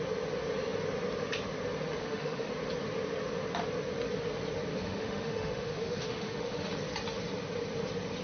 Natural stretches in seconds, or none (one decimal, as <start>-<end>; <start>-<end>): 0.0-2.0; 2.5-4.7; 6.7-8.2